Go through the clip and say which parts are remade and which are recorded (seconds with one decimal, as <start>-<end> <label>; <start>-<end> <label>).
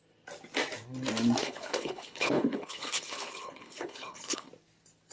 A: 0.0-1.4 recorded; 1.4-4.5 remade; 4.5-5.1 recorded